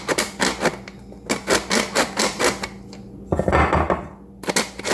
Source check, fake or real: real